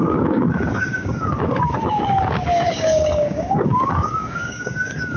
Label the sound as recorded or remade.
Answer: remade